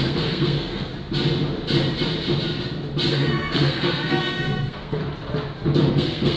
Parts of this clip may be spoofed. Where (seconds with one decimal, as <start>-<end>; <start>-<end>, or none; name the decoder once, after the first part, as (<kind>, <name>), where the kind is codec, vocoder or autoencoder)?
0.0-0.9 (codec, SNAC); 3.1-5.0; 5.9-6.4